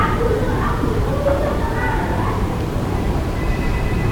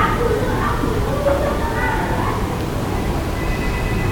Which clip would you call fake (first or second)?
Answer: first